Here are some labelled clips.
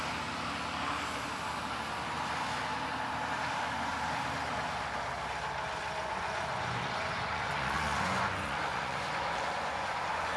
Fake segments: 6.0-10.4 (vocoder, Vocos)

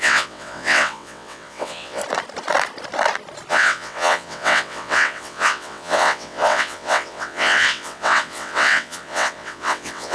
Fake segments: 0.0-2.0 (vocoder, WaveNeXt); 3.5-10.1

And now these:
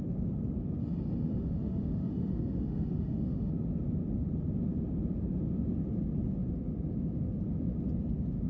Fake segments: 0.8-3.5 (autoencoder, DAC-VAE)

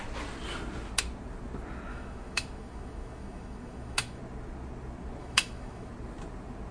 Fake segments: 1.9-4.2 (autoencoder, DAC-VAE); 5.2-5.9

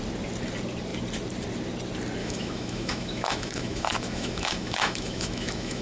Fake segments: 2.2-5.8 (autoencoder, DAC-VAE)

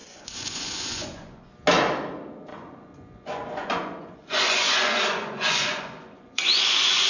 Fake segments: 0.0-1.5 (vocoder, Vocos); 2.5-7.1